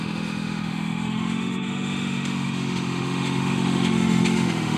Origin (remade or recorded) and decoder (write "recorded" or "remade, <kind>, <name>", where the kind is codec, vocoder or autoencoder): remade, autoencoder, DAC-VAE